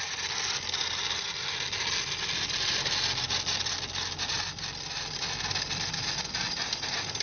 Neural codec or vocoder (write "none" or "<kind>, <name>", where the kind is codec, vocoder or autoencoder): none